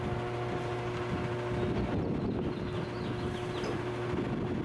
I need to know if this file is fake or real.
real